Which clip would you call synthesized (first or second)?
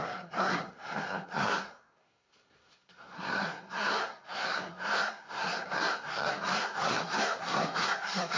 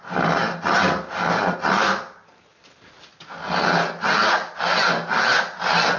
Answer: first